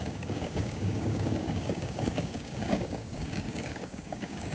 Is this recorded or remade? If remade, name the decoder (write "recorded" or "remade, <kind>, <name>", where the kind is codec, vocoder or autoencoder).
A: remade, codec, DAC